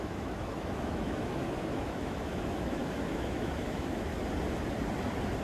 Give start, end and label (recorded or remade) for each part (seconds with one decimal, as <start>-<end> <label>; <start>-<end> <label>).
0.0-4.1 remade; 4.1-5.4 recorded